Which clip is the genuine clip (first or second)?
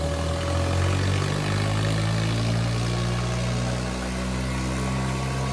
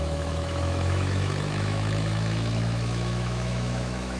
first